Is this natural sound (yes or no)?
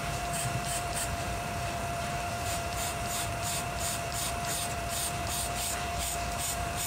no